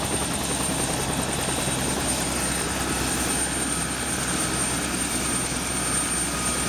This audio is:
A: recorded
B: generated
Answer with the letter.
A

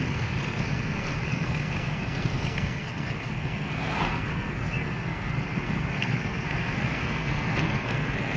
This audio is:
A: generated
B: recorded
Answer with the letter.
A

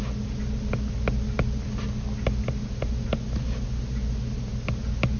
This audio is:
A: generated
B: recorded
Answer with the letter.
B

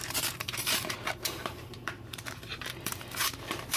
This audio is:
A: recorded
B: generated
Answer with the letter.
B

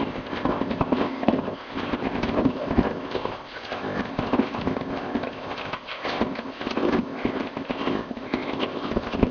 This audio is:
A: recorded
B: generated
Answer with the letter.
B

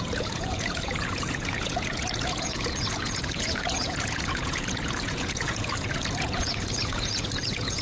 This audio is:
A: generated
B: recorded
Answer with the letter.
A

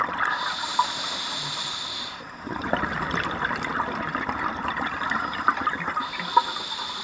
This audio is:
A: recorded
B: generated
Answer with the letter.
A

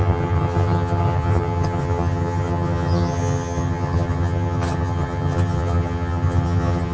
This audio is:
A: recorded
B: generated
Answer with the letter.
B